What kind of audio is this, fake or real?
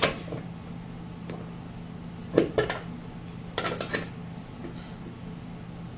real